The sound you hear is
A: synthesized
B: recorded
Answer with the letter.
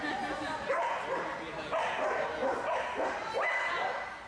B